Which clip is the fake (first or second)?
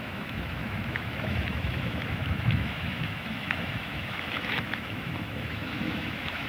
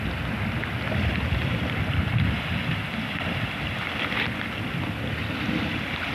first